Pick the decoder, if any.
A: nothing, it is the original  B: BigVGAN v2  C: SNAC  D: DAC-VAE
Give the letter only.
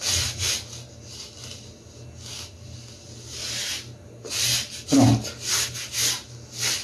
A